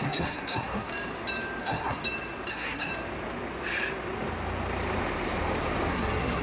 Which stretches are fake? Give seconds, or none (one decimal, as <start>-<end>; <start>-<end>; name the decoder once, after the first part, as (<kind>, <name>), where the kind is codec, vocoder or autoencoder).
0.0-0.9 (codec, SNAC); 1.6-2.0; 2.5-2.9; 5.9-6.4